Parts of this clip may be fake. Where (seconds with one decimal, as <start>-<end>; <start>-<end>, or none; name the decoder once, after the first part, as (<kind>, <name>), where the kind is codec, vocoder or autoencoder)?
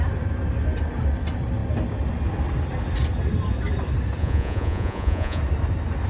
4.2-5.4 (vocoder, Vocos)